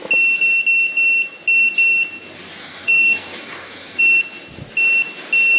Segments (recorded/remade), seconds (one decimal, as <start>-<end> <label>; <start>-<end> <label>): 0.0-2.6 recorded; 2.6-4.0 remade; 4.0-5.6 recorded